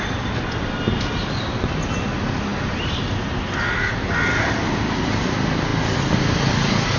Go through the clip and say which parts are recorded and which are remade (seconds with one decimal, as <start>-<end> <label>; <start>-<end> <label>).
0.0-7.0 recorded